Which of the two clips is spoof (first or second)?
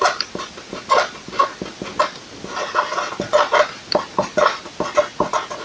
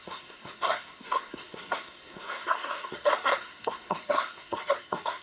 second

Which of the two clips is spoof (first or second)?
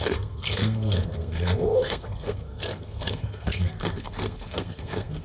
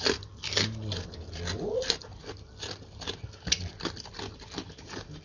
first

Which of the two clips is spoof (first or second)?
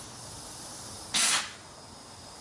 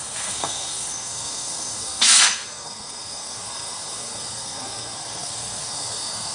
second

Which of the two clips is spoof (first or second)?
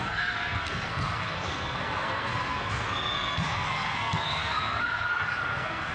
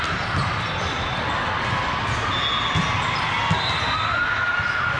first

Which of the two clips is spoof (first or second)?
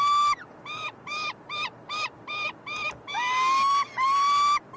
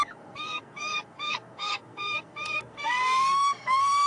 second